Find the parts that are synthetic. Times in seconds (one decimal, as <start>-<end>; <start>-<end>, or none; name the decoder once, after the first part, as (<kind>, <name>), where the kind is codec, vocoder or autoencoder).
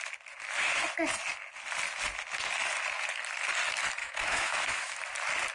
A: 4.0-5.0 (autoencoder, DAC-VAE)